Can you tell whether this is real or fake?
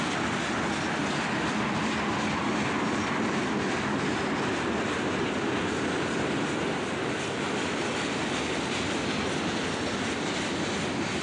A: real